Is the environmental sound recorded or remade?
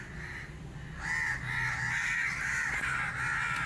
recorded